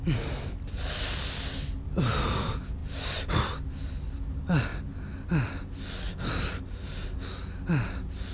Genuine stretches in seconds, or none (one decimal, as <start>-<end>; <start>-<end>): 0.0-8.3